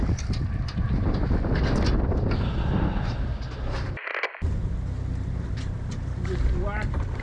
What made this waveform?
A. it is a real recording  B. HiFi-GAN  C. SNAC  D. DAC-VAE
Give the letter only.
A